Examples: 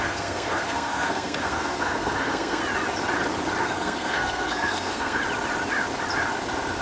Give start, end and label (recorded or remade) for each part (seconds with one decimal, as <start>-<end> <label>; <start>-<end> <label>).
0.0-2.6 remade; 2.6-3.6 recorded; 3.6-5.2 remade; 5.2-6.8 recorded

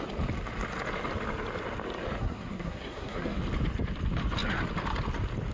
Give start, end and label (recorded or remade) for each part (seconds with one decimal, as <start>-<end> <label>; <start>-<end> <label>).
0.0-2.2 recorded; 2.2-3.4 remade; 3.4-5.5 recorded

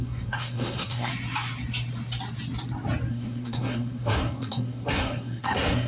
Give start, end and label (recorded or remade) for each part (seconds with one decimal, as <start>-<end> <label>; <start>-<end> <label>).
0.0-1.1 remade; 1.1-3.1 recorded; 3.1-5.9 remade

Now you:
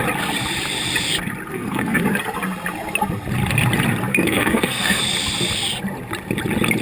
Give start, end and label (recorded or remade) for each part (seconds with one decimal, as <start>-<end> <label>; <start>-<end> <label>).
0.0-1.5 recorded; 1.5-2.0 remade; 2.0-4.1 recorded; 4.1-5.0 remade; 5.0-6.8 recorded